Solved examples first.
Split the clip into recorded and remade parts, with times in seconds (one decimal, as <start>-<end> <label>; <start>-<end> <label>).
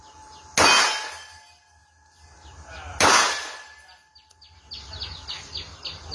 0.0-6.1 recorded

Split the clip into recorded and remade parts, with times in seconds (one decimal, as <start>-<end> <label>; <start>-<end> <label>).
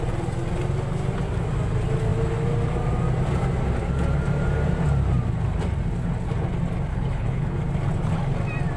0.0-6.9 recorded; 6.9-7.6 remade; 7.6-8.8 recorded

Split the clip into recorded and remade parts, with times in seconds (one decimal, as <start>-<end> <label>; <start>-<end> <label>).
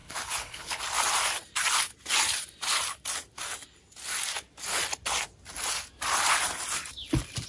0.0-0.8 remade; 0.8-7.5 recorded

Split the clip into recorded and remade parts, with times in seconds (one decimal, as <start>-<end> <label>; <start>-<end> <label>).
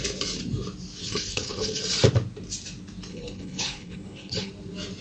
0.0-1.0 recorded; 1.0-1.8 remade; 1.8-3.1 recorded; 3.1-4.5 remade; 4.5-5.0 recorded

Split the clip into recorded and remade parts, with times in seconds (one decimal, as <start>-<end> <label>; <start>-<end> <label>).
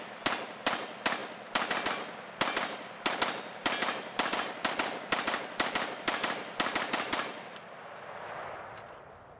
0.0-9.4 recorded